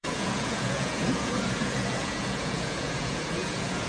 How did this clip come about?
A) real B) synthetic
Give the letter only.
B